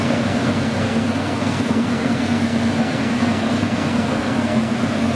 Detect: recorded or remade remade